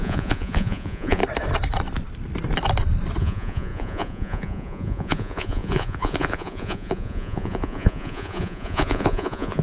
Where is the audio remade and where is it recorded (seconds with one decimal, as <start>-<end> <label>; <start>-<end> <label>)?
0.0-1.2 remade; 1.2-3.2 recorded; 3.2-9.6 remade